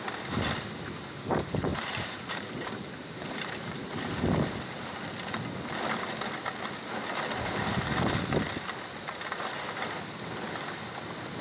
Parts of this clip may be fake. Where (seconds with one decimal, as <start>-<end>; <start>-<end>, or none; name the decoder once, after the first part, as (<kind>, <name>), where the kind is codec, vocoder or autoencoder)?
1.7-4.2 (vocoder, BigVGAN v2)